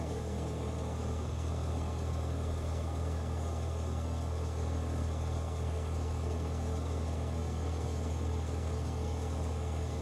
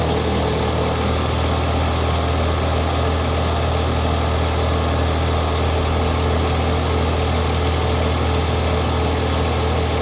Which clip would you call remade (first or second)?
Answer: first